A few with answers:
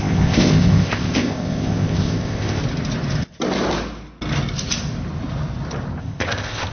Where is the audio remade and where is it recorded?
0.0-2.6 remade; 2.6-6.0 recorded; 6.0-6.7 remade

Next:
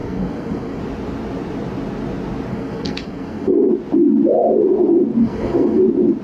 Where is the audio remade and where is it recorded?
0.0-0.8 remade; 0.8-2.5 recorded; 2.5-3.7 remade; 3.7-5.2 recorded; 5.2-5.8 remade; 5.8-6.2 recorded

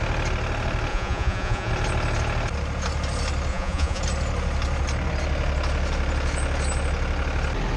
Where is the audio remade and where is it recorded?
0.0-0.9 recorded; 0.9-1.7 remade; 1.7-3.5 recorded; 3.5-4.0 remade; 4.0-7.8 recorded

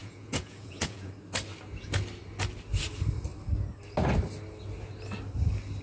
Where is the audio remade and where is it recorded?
0.0-1.1 remade; 1.1-5.8 recorded

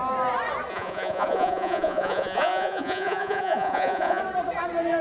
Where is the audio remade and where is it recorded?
0.0-0.7 recorded; 0.7-4.2 remade; 4.2-5.0 recorded

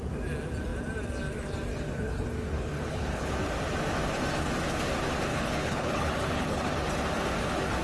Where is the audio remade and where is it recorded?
0.0-1.7 recorded; 1.7-3.3 remade; 3.3-5.3 recorded; 5.3-6.6 remade; 6.6-7.8 recorded

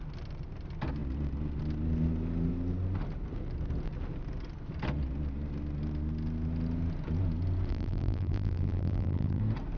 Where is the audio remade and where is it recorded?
0.0-7.7 recorded; 7.7-9.4 remade; 9.4-9.8 recorded